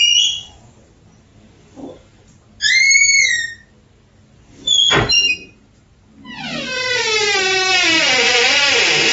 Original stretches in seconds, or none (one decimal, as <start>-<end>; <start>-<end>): 0.0-9.1